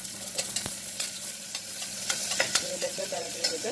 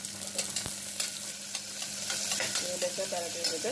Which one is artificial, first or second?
first